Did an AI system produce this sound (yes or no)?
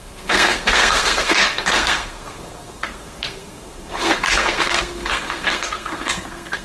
yes